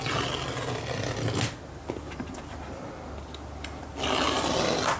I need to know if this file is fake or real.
real